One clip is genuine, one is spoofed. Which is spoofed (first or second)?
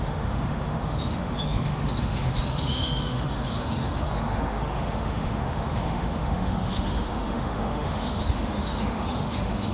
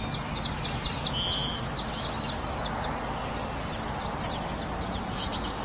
first